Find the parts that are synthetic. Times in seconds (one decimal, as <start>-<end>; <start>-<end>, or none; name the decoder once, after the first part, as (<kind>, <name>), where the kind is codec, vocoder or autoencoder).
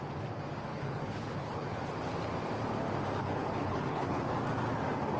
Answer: 0.7-1.8 (codec, HILCodec); 3.2-4.2